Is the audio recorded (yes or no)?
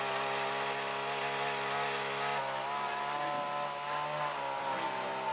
yes